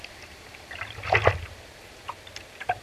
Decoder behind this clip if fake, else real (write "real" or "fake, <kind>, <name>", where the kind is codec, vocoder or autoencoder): fake, vocoder, BigVGAN v2